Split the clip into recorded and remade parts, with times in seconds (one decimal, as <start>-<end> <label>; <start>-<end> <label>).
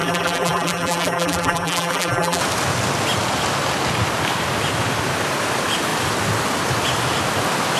0.0-2.4 remade; 2.4-7.8 recorded